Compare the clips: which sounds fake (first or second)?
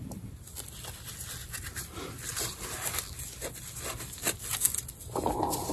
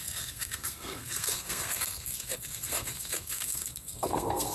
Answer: second